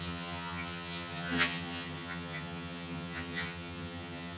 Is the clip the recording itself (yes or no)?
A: no